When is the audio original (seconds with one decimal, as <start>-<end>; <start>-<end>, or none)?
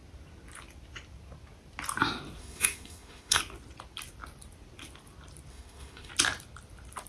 0.0-2.4; 3.4-5.5; 6.1-7.1